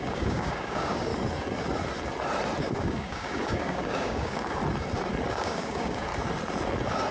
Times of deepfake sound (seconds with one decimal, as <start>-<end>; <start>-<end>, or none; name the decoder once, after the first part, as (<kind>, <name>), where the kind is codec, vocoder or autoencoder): 0.0-1.1 (codec, DAC); 2.6-4.6; 5.3-6.1